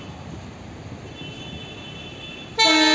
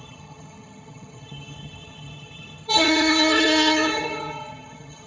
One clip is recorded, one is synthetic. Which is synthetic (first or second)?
second